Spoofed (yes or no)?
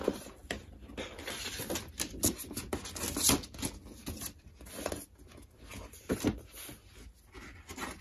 no